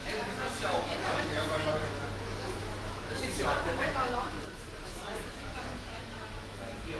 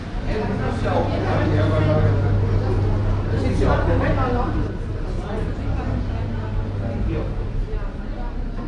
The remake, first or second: first